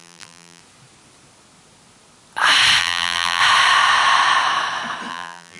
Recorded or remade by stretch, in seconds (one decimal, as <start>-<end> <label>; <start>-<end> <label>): 0.0-0.6 remade; 0.6-2.8 recorded; 2.8-3.4 remade; 3.4-5.1 recorded; 5.1-5.6 remade

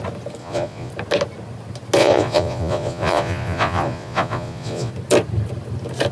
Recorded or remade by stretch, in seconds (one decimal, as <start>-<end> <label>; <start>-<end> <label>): 0.0-0.4 recorded; 0.4-0.9 remade; 0.9-2.0 recorded; 2.0-4.9 remade; 4.9-6.1 recorded

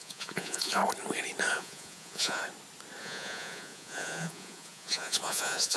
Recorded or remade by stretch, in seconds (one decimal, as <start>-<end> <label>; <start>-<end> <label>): 0.0-0.8 remade; 0.8-1.5 recorded; 1.5-2.4 remade; 2.4-3.0 recorded; 3.0-5.8 remade

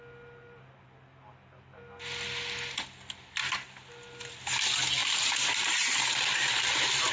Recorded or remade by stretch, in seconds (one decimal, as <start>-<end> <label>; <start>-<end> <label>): 0.0-5.0 recorded; 5.0-7.1 remade

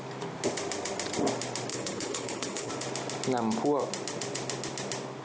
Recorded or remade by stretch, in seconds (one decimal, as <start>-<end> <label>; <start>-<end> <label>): 0.0-1.7 recorded; 1.7-2.7 remade; 2.7-5.2 recorded

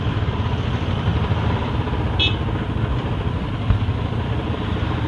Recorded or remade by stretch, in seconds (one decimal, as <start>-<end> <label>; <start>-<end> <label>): 0.0-5.1 recorded

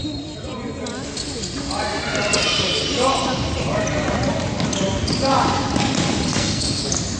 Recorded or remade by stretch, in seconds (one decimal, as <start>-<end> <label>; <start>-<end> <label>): 0.0-6.3 recorded; 6.3-6.8 remade; 6.8-7.2 recorded

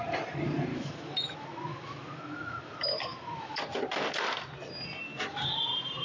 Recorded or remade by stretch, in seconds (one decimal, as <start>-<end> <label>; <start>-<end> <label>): 0.0-0.7 recorded; 0.7-3.6 remade; 3.6-6.0 recorded